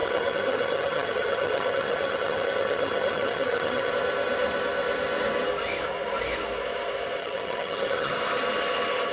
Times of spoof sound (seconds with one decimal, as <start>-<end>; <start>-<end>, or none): 0.0-3.9; 7.2-8.1